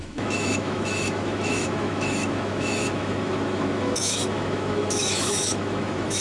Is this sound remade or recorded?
remade